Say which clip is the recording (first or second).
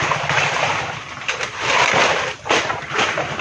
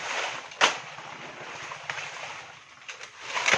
second